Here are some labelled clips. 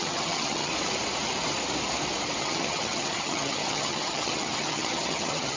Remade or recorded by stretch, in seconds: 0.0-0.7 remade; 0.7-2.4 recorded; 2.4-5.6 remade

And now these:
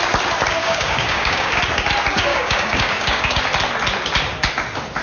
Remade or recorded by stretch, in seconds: 0.0-0.6 recorded; 0.6-1.6 remade; 1.6-2.3 recorded; 2.3-3.4 remade; 3.4-5.0 recorded